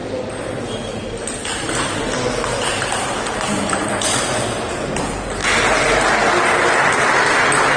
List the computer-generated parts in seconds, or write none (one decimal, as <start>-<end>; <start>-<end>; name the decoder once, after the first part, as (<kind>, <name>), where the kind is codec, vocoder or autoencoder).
none